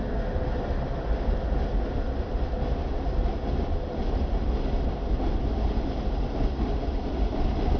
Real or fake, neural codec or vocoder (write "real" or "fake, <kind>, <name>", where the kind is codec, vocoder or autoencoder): real